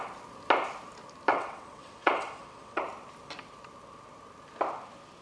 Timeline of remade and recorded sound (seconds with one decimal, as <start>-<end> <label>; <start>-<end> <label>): 0.0-1.3 recorded; 1.3-2.8 remade; 2.8-5.2 recorded